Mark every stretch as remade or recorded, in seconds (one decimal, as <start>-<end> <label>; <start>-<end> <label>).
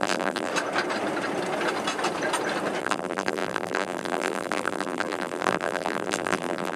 0.0-0.5 remade; 0.5-2.8 recorded; 2.8-6.8 remade